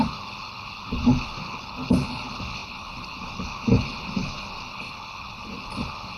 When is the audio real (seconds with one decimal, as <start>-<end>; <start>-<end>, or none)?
none

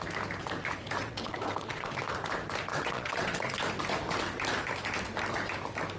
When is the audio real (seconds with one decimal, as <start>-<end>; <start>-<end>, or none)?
0.0-1.0; 2.0-2.7; 3.5-6.0

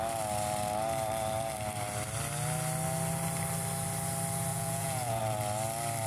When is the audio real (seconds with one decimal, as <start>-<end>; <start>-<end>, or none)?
0.0-4.5; 5.2-6.1

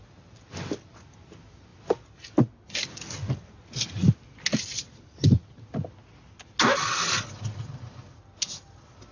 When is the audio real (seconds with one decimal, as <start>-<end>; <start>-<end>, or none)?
0.0-9.1

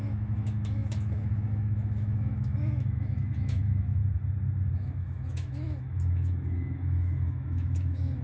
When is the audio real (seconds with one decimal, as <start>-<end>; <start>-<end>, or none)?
4.0-4.7

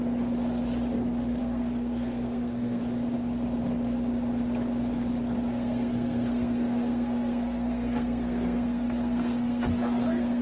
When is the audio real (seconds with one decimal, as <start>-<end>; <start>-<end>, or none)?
0.0-1.4; 2.8-5.5

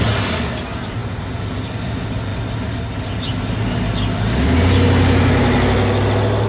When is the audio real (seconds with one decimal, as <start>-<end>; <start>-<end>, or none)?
0.0-6.5

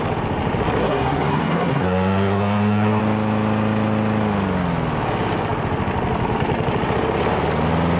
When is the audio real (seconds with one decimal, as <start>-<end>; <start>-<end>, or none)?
0.0-0.8; 3.0-8.0